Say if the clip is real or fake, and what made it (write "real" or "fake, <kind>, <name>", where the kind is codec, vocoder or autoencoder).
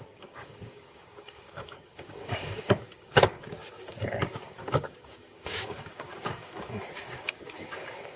fake, codec, DAC